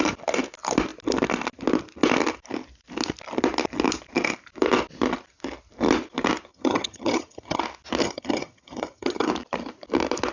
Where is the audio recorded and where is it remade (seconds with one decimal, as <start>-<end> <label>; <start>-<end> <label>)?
0.0-6.5 recorded; 6.5-7.6 remade; 7.6-8.0 recorded; 8.0-9.3 remade; 9.3-10.3 recorded